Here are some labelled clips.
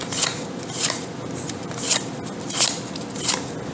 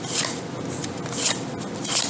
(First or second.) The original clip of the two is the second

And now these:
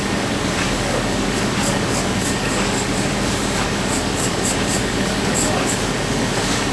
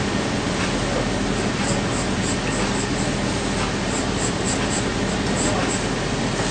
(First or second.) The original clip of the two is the second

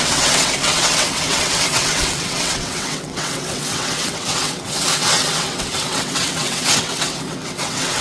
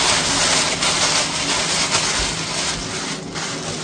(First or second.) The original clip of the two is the second